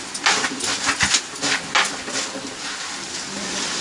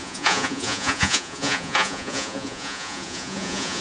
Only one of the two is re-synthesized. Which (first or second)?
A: second